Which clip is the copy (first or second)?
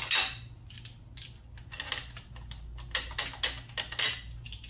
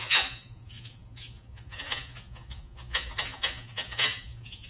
second